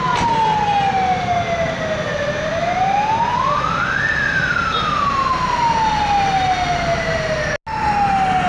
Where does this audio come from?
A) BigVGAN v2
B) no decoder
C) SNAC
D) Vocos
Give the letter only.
B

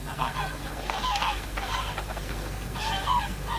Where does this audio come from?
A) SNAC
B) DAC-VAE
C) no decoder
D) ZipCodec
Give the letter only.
A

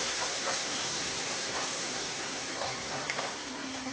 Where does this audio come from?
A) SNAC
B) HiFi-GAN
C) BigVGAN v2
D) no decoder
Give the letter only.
A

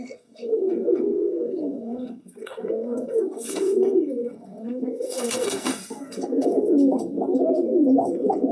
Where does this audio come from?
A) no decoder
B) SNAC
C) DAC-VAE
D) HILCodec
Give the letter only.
B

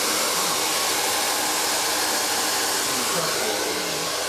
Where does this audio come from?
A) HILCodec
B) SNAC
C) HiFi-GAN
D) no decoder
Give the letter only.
D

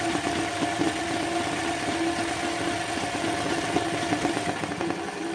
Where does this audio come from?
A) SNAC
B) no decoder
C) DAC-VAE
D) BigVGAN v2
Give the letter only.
B